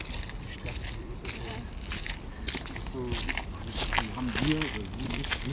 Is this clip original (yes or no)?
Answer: yes